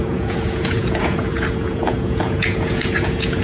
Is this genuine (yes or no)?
no